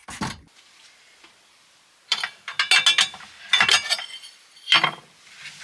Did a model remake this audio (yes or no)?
no